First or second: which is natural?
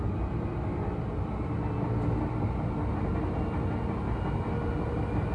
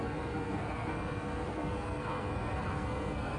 first